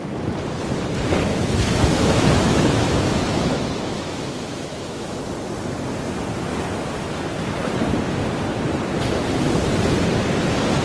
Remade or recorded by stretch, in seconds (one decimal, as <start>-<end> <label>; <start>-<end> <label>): 0.0-1.3 recorded; 1.3-5.2 remade; 5.2-10.8 recorded

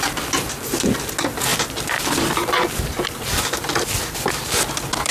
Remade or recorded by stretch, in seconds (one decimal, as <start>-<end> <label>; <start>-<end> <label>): 0.0-5.1 recorded

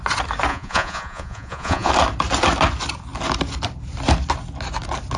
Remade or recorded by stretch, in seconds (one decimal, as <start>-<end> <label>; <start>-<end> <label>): 0.0-0.5 recorded; 0.5-1.9 remade; 1.9-5.2 recorded

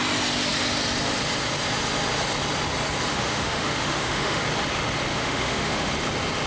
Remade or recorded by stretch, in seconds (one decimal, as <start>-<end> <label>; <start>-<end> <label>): 0.0-3.1 recorded; 3.1-4.4 remade; 4.4-5.1 recorded; 5.1-5.9 remade; 5.9-6.5 recorded

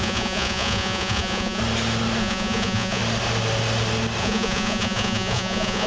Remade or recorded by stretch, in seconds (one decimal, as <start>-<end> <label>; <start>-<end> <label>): 0.0-1.6 remade; 1.6-2.2 recorded; 2.2-3.0 remade; 3.0-4.2 recorded; 4.2-5.9 remade

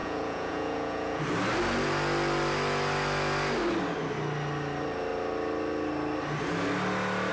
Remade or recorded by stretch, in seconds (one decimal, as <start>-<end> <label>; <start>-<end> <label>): 0.0-1.2 remade; 1.2-7.3 recorded

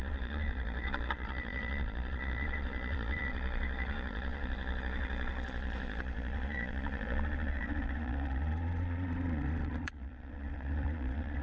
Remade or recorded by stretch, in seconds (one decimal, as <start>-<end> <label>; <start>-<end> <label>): 0.0-11.4 remade

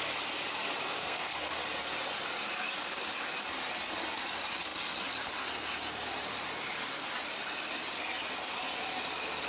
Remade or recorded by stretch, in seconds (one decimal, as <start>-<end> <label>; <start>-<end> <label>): 0.0-1.0 recorded; 1.0-1.5 remade; 1.5-9.5 recorded